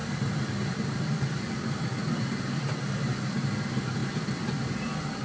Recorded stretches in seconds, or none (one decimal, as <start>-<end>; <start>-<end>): 0.0-5.2